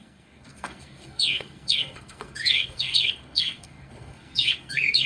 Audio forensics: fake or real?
fake